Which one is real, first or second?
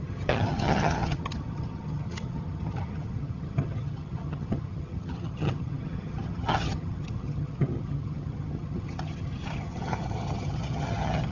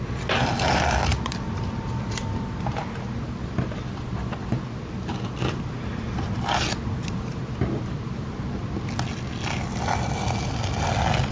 second